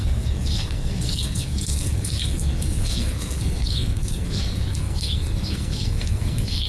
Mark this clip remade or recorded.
remade